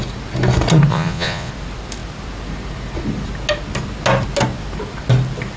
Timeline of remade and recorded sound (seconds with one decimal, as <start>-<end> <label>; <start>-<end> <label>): 0.0-0.9 recorded; 0.9-1.5 remade; 1.5-5.6 recorded